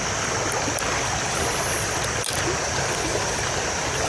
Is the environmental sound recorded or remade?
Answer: recorded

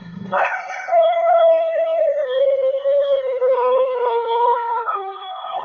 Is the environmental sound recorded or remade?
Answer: remade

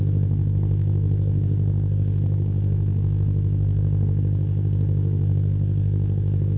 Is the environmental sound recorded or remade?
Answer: remade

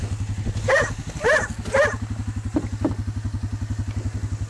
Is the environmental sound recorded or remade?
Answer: recorded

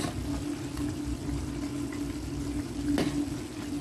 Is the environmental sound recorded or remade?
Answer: recorded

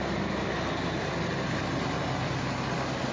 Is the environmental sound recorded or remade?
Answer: recorded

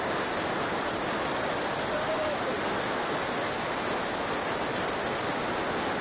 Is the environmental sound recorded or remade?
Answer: recorded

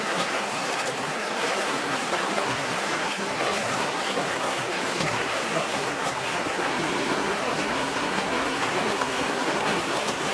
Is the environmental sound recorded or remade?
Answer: remade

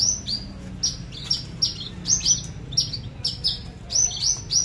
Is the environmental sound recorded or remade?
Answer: recorded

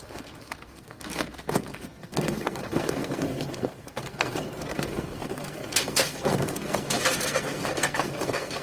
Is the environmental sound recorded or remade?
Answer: remade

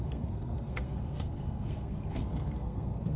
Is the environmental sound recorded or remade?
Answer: remade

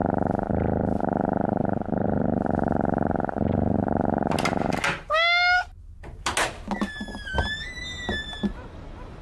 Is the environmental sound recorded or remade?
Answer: recorded